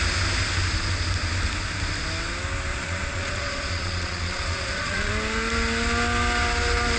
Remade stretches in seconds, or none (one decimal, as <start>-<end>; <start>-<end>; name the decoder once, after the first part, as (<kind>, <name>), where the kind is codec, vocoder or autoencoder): 2.7-5.1 (vocoder, Vocos)